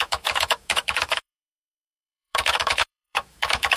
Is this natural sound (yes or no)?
no